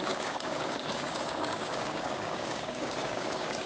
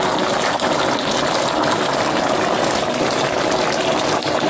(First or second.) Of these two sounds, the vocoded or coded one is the first